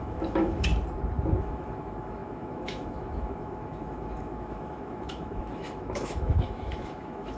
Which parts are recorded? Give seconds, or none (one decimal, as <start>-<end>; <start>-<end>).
0.7-1.4